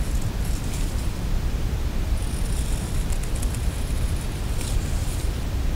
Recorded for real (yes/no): yes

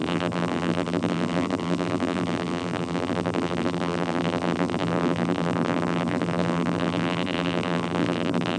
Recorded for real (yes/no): no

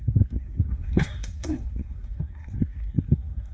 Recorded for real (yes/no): no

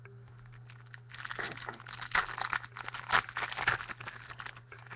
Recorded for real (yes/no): yes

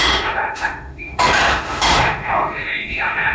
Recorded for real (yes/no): no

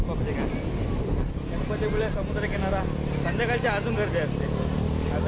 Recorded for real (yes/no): yes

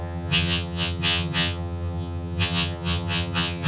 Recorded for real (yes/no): no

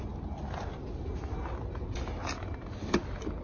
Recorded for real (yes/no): yes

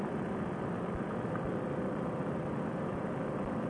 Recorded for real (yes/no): yes